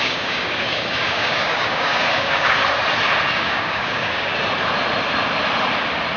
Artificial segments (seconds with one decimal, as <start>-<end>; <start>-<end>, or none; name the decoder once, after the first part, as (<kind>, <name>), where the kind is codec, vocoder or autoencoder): 0.0-2.6 (codec, DAC); 3.3-4.3